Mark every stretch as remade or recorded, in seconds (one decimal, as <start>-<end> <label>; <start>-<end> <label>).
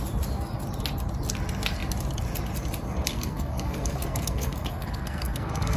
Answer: 0.0-3.1 recorded; 3.1-5.8 remade